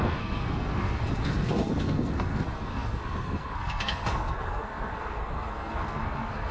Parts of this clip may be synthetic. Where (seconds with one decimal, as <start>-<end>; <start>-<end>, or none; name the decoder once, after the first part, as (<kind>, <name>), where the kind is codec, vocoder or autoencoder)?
0.0-6.5 (codec, SNAC)